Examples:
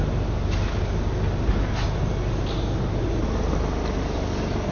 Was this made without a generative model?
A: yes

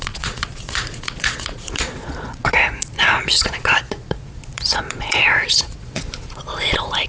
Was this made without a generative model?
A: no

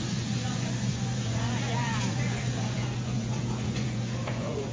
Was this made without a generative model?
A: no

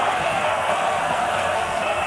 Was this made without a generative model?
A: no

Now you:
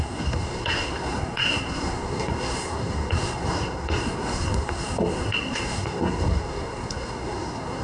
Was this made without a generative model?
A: no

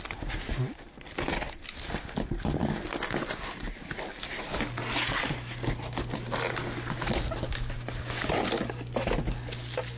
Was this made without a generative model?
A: yes